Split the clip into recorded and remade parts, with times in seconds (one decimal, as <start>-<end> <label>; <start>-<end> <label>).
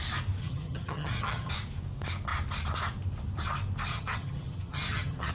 0.0-0.4 recorded; 0.4-1.5 remade; 1.5-3.9 recorded; 3.9-5.3 remade